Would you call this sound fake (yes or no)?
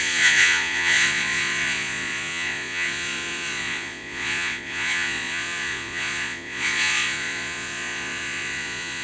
yes